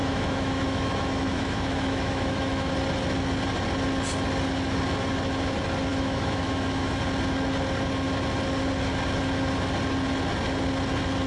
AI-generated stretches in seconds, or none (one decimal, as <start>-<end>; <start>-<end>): 0.0-2.7; 5.9-7.0